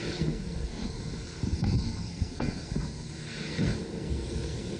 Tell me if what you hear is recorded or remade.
remade